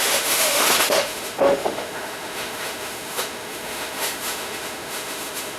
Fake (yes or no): yes